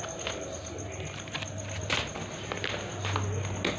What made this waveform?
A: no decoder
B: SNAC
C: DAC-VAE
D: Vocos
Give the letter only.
A